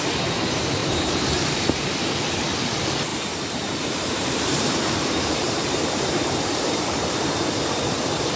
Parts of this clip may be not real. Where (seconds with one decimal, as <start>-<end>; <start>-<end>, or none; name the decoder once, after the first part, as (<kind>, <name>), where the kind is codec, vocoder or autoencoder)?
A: 0.8-1.9 (vocoder, BigVGAN v2); 3.1-7.3